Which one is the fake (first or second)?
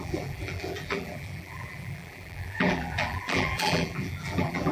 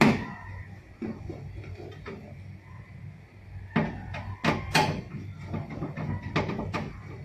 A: first